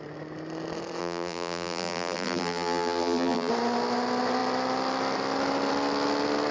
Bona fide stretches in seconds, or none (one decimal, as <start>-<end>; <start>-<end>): 0.0-1.0; 3.5-6.5